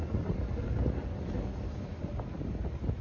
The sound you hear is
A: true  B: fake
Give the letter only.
A